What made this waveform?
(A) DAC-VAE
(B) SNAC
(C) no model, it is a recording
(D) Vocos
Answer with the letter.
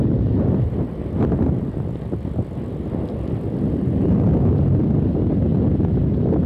C